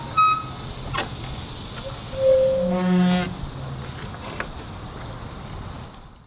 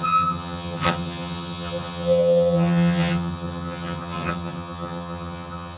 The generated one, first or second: second